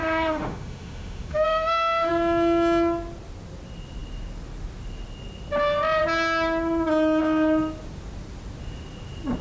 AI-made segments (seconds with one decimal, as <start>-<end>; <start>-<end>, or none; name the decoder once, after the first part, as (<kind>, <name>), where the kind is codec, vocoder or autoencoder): 0.0-2.1 (autoencoder, DAC-VAE)